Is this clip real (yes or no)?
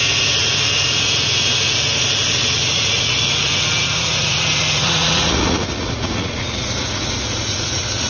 no